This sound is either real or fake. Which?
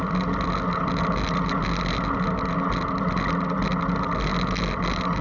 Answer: real